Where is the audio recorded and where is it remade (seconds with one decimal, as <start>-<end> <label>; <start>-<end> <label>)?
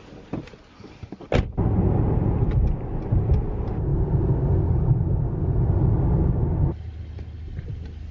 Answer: 0.0-8.1 recorded